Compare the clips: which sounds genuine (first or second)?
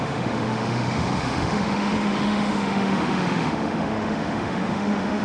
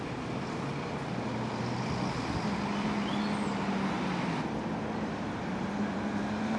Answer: second